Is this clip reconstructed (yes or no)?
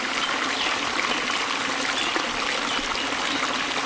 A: no